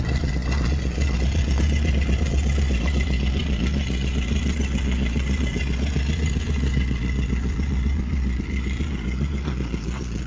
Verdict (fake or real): fake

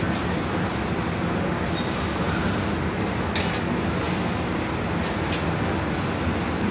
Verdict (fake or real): real